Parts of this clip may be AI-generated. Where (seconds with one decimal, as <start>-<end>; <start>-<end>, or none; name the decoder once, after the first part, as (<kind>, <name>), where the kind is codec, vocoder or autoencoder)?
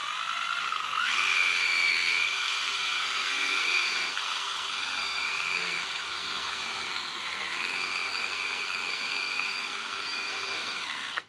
0.6-11.3 (codec, SNAC)